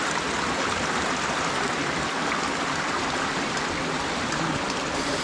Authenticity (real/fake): real